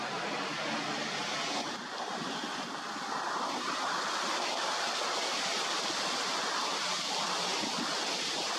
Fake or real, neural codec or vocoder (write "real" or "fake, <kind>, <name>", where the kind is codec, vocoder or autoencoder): real